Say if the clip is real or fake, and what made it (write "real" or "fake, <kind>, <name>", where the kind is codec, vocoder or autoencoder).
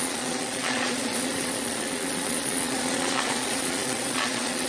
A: fake, vocoder, Vocos